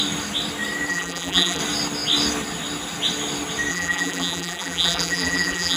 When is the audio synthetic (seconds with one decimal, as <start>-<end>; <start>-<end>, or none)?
0.9-1.6; 3.7-5.8